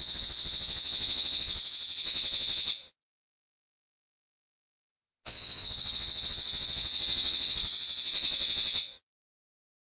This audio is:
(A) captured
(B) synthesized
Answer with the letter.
B